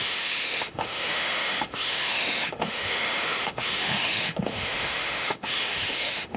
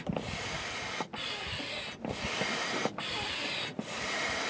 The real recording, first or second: second